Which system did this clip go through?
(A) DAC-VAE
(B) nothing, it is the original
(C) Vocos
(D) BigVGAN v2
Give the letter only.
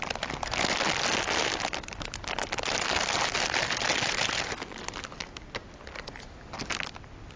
B